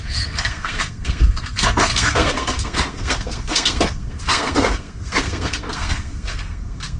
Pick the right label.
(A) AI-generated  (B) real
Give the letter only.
A